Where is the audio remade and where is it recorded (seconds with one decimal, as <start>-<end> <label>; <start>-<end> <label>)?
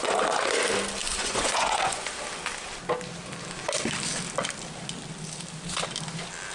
0.0-1.0 recorded; 1.0-2.1 remade; 2.1-6.5 recorded